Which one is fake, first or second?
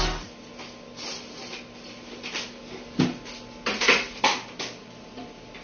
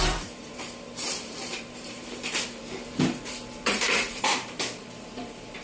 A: second